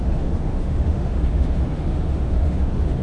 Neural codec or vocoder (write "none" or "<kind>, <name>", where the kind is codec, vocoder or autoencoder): autoencoder, DAC-VAE